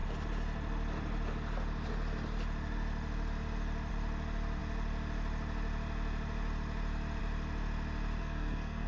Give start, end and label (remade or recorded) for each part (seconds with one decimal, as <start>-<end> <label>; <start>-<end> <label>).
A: 0.0-8.2 recorded; 8.2-8.9 remade